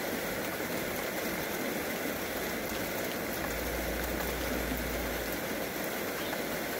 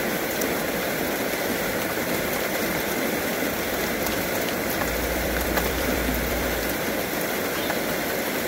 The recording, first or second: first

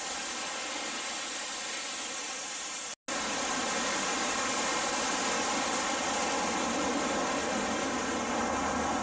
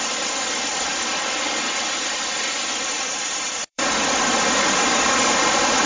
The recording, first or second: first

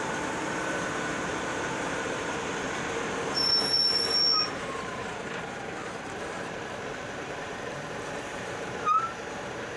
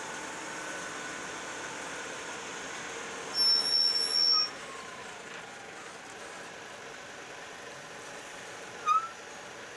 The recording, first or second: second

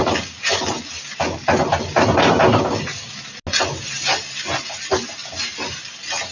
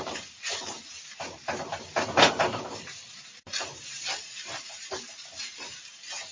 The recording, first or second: first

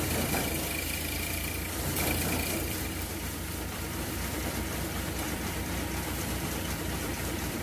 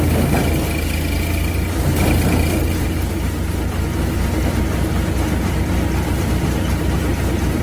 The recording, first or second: second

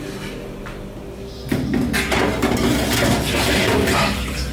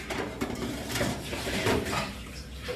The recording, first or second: first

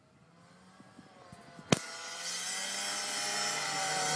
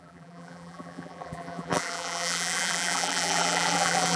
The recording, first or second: first